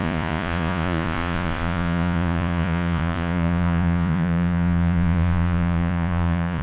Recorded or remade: remade